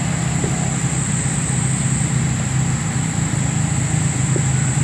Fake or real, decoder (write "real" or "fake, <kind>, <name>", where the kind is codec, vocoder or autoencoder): real